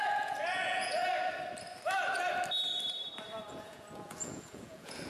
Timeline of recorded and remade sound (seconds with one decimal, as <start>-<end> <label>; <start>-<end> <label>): 0.0-1.0 remade; 1.0-3.5 recorded; 3.5-5.1 remade